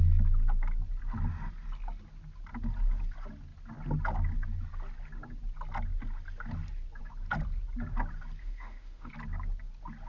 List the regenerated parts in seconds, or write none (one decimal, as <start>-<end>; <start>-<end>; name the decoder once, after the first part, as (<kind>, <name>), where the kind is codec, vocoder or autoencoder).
8.4-9.1 (autoencoder, DAC-VAE)